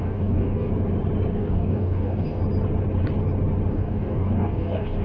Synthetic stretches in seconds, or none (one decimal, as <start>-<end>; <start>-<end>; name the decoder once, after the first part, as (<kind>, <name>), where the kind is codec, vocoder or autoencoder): 0.0-0.7 (codec, DAC); 1.3-2.4; 3.7-5.0